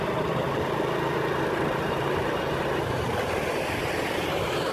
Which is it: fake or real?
real